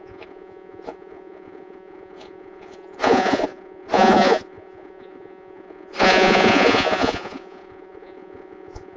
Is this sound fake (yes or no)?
yes